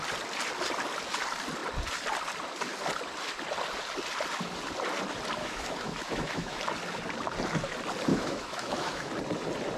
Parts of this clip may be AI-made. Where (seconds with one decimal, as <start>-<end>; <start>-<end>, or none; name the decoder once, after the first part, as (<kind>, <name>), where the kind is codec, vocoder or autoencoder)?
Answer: 5.4-6.6 (autoencoder, DAC-VAE); 8.1-9.1